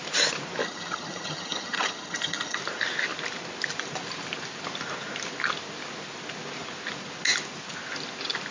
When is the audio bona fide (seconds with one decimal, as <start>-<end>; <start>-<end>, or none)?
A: 0.0-0.6; 2.6-8.5